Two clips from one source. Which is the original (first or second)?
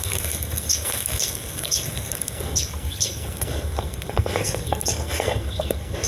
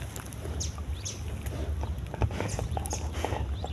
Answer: second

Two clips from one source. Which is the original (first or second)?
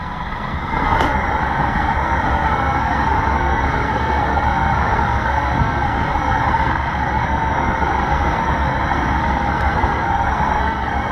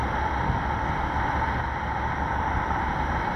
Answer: second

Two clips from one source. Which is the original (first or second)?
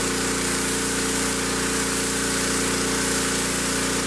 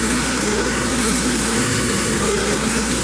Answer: first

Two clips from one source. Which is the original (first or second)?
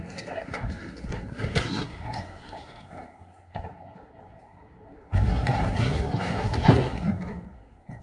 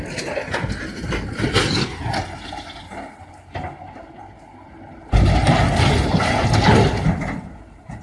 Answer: second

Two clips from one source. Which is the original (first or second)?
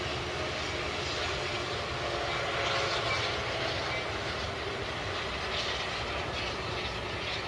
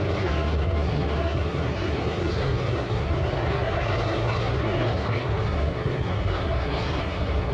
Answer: first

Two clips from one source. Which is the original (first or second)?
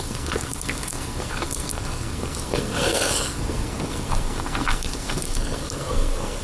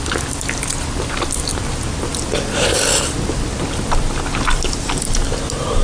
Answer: second